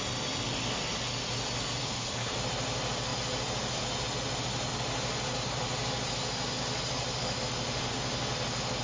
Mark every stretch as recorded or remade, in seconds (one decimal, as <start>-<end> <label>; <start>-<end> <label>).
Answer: 0.0-1.8 recorded; 1.8-2.3 remade; 2.3-8.8 recorded